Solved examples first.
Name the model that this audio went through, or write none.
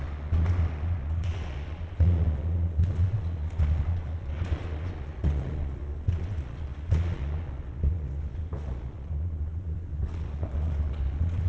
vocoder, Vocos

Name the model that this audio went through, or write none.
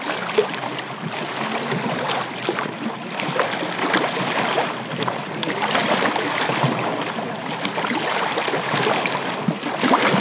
none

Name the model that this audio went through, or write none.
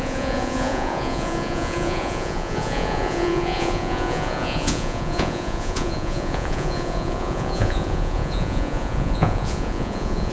vocoder, Vocos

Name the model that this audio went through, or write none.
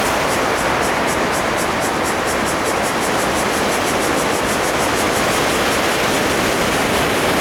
none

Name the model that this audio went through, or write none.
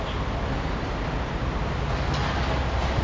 none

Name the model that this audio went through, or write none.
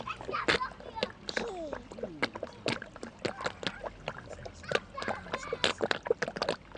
none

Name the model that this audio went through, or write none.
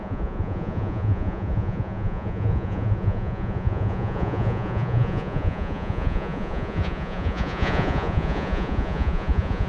vocoder, Vocos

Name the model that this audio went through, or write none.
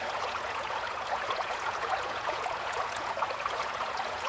vocoder, Vocos